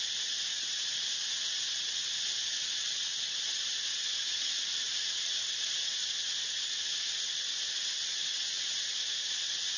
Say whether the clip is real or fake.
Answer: fake